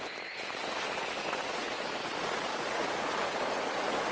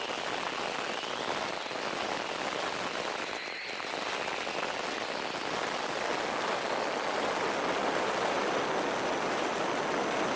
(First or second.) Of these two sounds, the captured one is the second